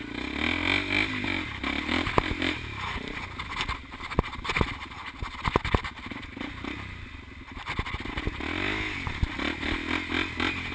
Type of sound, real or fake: real